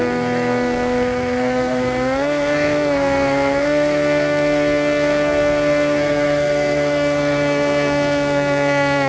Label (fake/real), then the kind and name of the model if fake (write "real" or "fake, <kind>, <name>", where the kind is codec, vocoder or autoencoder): fake, codec, SNAC